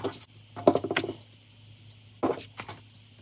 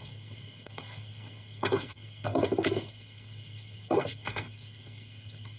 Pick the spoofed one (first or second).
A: second